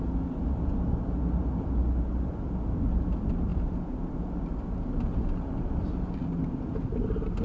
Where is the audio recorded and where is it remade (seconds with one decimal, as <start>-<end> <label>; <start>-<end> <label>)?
0.0-7.4 recorded